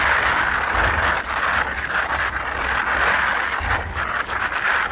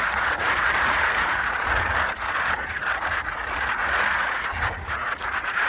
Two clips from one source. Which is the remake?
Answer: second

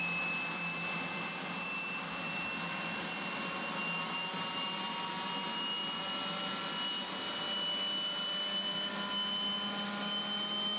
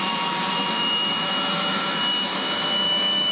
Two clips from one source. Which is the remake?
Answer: second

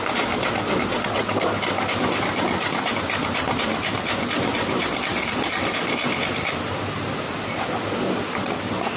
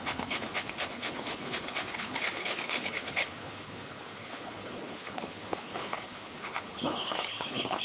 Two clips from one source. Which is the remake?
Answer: second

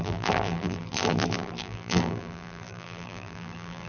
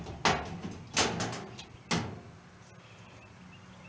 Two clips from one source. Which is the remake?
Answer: first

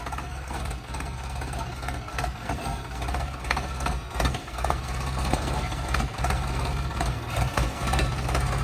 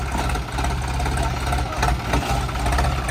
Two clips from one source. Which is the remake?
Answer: first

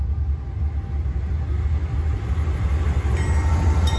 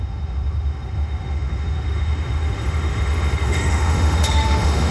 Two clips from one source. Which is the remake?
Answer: second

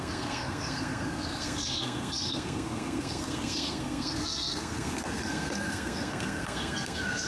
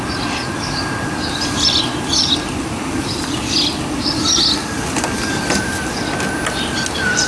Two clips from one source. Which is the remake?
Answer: first